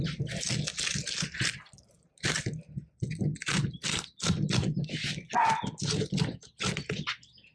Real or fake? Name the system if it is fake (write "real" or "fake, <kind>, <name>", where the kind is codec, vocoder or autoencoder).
real